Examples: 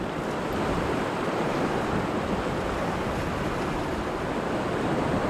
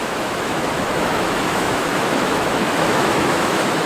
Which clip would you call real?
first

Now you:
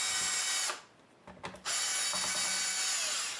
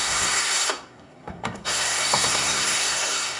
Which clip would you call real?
first